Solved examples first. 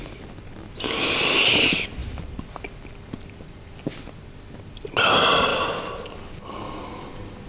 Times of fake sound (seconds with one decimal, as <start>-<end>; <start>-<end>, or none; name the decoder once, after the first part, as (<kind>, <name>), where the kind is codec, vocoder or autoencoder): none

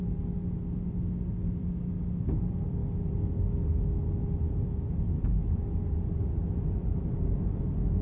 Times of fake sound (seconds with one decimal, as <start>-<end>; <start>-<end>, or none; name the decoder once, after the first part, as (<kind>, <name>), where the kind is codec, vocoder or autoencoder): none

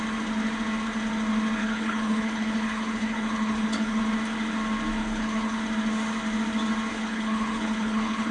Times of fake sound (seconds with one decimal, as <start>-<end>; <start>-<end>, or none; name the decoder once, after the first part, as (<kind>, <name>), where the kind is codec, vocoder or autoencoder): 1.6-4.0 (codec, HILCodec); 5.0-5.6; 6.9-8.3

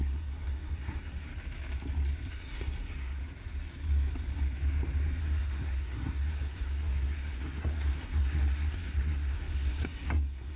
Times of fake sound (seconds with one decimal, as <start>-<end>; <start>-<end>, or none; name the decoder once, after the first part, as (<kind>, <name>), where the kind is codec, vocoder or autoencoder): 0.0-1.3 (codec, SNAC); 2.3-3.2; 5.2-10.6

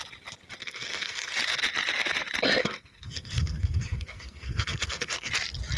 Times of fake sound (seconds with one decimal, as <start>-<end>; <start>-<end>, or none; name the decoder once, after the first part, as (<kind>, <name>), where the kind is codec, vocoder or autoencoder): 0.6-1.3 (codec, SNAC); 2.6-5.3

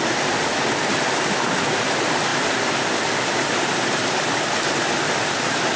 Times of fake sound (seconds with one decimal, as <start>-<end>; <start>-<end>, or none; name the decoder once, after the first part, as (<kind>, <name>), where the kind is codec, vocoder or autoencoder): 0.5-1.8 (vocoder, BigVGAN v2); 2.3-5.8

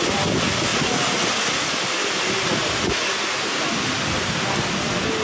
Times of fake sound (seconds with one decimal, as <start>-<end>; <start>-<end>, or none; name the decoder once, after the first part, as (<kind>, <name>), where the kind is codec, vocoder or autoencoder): none

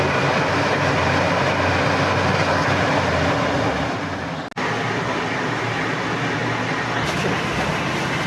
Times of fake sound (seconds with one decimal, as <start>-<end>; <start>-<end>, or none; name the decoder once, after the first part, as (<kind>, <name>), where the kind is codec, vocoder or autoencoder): none